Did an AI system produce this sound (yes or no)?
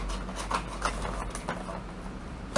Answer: no